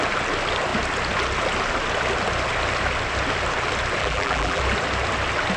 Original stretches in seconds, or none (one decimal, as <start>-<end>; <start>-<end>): 0.0-4.0; 4.6-5.6